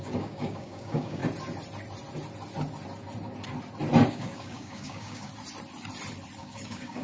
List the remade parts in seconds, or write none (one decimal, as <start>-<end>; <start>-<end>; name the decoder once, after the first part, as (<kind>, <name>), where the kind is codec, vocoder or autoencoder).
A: 0.0-1.2 (codec, DAC); 4.1-5.3; 6.4-7.0